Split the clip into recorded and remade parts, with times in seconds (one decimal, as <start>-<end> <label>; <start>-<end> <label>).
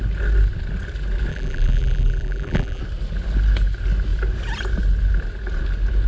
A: 0.0-1.3 recorded; 1.3-2.8 remade; 2.8-6.1 recorded